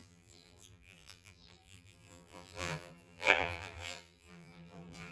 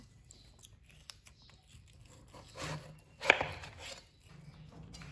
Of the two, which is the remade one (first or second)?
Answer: first